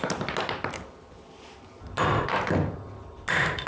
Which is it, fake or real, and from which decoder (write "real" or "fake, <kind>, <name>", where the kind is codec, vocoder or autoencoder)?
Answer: real